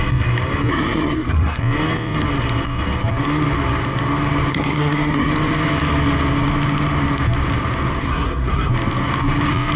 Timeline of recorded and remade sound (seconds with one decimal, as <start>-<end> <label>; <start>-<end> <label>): 0.0-0.7 recorded; 0.7-1.6 remade; 1.6-4.5 recorded; 4.5-5.3 remade; 5.3-8.0 recorded; 8.0-8.7 remade; 8.7-9.8 recorded